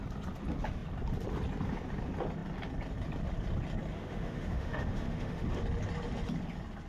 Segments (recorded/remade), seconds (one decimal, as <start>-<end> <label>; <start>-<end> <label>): 0.0-3.9 recorded; 3.9-5.6 remade; 5.6-6.9 recorded